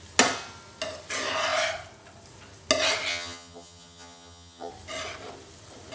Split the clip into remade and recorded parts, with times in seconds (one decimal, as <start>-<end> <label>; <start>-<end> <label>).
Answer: 0.0-3.1 recorded; 3.1-4.7 remade; 4.7-5.9 recorded